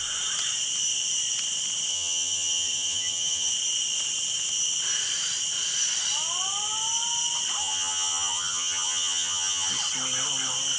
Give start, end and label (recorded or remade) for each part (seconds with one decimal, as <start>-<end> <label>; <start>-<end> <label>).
0.0-1.9 recorded; 1.9-3.5 remade; 3.5-7.6 recorded; 7.6-9.7 remade; 9.7-10.8 recorded